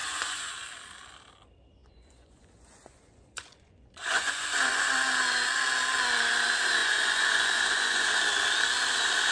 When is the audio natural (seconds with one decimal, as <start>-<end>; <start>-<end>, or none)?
0.5-1.8; 4.9-6.8; 8.1-9.3